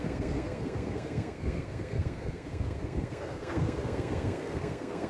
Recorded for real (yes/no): no